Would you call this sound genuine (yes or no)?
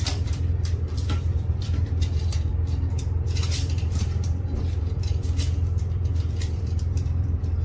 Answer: no